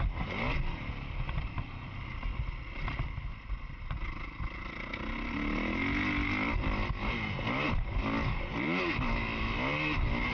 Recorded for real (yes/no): yes